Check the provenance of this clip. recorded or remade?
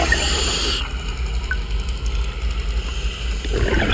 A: recorded